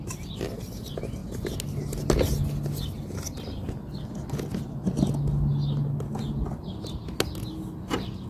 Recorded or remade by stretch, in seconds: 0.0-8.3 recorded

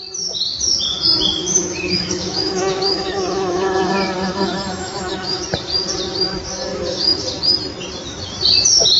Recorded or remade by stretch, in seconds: 0.0-1.4 recorded; 1.4-5.4 remade; 5.4-6.7 recorded; 6.7-7.2 remade; 7.2-9.0 recorded

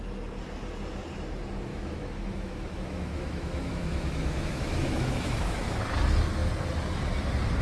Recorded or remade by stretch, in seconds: 0.0-1.7 recorded; 1.7-5.8 remade; 5.8-7.6 recorded

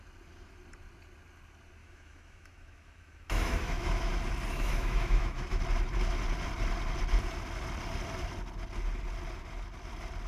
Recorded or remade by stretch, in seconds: 0.0-1.8 recorded; 1.8-4.1 remade; 4.1-4.5 recorded; 4.5-5.6 remade; 5.6-10.3 recorded

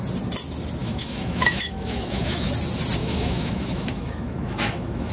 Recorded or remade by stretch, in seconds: 0.0-0.8 recorded; 0.8-2.5 remade; 2.5-3.0 recorded; 3.0-5.1 remade

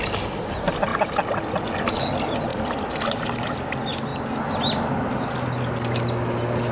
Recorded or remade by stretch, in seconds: 0.0-6.7 recorded